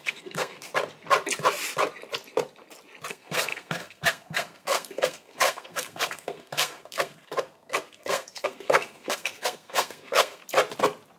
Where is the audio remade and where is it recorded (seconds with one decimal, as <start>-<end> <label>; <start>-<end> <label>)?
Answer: 0.0-0.7 remade; 0.7-3.1 recorded; 3.1-10.4 remade; 10.4-11.2 recorded

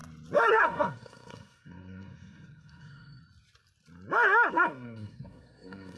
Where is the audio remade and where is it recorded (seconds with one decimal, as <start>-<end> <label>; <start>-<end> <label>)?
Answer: 0.0-0.5 recorded; 0.5-3.2 remade; 3.2-4.5 recorded; 4.5-6.0 remade

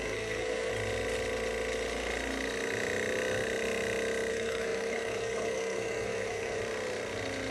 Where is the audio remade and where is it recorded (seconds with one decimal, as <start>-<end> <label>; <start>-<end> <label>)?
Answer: 0.0-0.7 remade; 0.7-4.3 recorded; 4.3-6.6 remade; 6.6-7.5 recorded

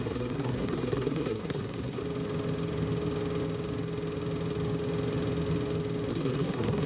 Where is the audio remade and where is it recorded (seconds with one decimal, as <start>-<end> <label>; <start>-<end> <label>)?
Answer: 0.0-2.0 remade; 2.0-6.1 recorded; 6.1-6.9 remade

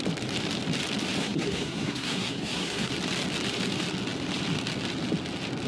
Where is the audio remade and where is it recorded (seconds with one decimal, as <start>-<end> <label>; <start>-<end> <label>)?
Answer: 0.0-1.2 recorded; 1.2-2.9 remade; 2.9-5.7 recorded

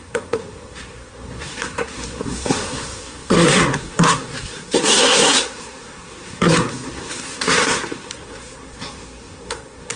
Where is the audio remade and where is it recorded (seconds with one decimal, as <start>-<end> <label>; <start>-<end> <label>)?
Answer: 0.0-10.0 remade

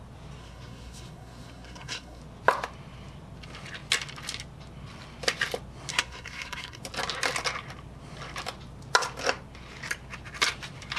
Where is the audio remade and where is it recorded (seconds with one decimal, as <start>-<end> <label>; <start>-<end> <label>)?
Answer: 0.0-0.4 recorded; 0.4-2.2 remade; 2.2-5.9 recorded; 5.9-6.8 remade; 6.8-11.0 recorded

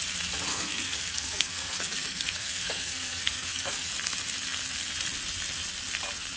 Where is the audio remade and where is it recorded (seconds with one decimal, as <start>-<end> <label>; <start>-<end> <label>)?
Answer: 0.0-0.5 recorded; 0.5-3.9 remade; 3.9-6.4 recorded